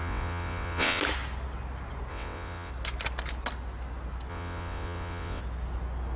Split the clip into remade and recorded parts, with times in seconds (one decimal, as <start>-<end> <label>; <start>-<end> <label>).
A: 0.0-1.0 remade; 1.0-2.1 recorded; 2.1-2.7 remade; 2.7-4.3 recorded; 4.3-5.4 remade; 5.4-6.2 recorded